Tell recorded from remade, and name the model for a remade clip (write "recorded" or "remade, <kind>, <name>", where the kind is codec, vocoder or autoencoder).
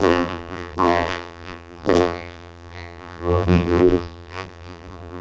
remade, vocoder, BigVGAN v2